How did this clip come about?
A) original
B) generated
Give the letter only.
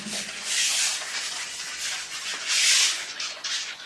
B